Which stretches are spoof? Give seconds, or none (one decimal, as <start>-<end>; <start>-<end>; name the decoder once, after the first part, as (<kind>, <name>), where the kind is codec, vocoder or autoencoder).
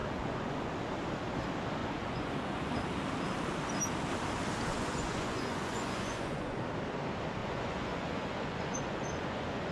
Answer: 0.0-0.7 (vocoder, Vocos); 1.8-2.7; 4.7-6.6; 7.4-9.7